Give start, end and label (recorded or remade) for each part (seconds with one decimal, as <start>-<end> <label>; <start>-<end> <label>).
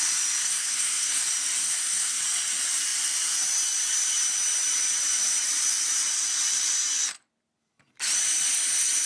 0.0-0.4 recorded; 0.4-1.2 remade; 1.2-1.6 recorded; 1.6-2.2 remade; 2.2-9.1 recorded